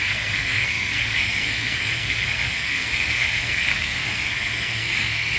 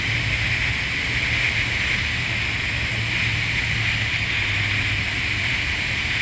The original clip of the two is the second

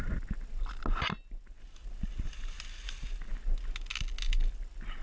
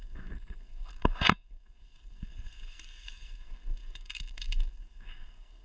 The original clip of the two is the first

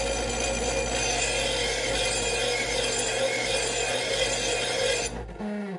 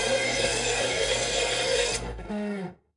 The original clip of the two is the first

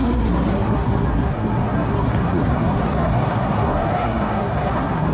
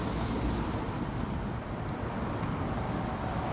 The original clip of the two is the second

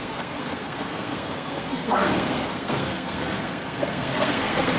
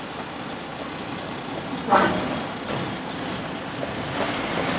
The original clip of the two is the second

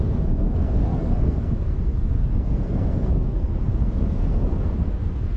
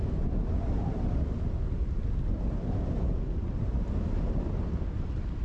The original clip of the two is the second